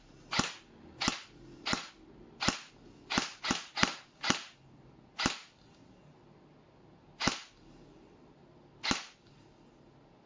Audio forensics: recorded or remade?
recorded